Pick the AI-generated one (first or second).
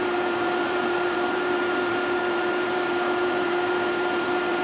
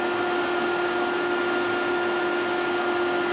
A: first